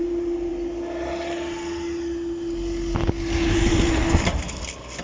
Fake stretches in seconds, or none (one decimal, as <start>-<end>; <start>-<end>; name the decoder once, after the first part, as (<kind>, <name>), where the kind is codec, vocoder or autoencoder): 0.0-0.5 (vocoder, BigVGAN v2); 3.5-4.0

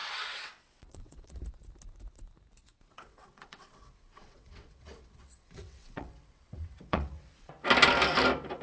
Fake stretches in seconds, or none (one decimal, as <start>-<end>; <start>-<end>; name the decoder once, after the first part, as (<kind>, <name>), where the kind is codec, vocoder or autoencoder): 0.0-1.4 (vocoder, WaveNeXt); 2.6-7.5

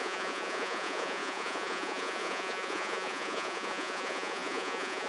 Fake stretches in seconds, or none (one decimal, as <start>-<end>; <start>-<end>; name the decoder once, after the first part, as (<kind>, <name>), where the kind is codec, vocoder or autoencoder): 0.0-5.1 (vocoder, Vocos)

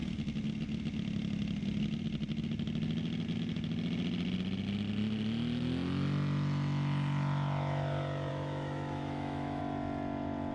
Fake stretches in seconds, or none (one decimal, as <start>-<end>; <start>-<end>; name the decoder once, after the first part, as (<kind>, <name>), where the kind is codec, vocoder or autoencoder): 8.3-9.6 (autoencoder, DAC-VAE)

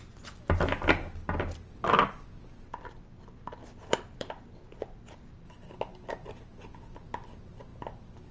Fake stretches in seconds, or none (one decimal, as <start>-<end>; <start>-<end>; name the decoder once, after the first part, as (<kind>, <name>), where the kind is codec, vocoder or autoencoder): none

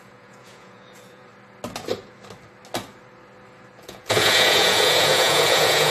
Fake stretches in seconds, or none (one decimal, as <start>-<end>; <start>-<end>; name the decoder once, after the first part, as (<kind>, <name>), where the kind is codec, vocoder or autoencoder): 0.0-1.3 (vocoder, Vocos); 3.8-5.9

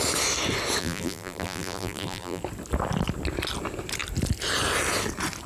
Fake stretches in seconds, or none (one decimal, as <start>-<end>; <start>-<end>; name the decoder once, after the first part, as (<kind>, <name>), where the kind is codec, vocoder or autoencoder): 0.8-2.4 (vocoder, BigVGAN v2)

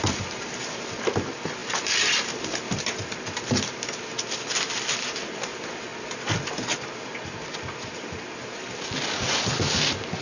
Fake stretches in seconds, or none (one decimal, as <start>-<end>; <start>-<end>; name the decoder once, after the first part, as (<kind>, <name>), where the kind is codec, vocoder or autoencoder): 0.0-5.9 (vocoder, BigVGAN v2); 8.6-10.2